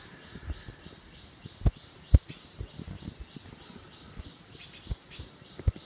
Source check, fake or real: real